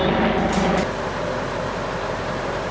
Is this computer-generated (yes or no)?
no